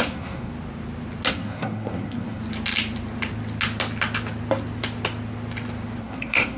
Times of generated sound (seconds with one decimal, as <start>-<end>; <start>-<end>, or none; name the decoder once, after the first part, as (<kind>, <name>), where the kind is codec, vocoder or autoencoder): 0.0-0.5 (codec, SNAC); 1.3-2.4; 6.0-6.6